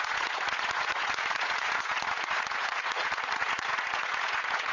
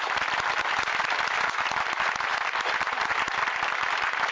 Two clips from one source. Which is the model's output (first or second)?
first